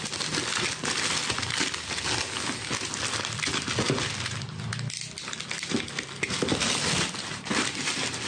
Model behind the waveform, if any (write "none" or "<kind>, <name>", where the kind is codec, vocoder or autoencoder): none